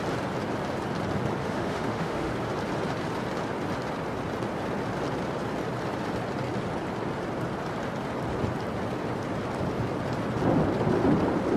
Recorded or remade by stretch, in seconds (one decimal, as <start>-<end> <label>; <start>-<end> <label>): 0.0-1.4 recorded; 1.4-2.3 remade; 2.3-11.6 recorded